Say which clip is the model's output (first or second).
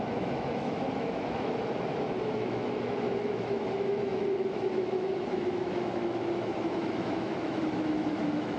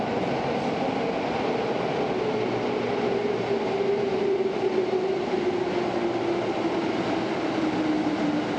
first